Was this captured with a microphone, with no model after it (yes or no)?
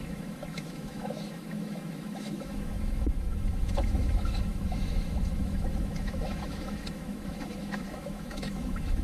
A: no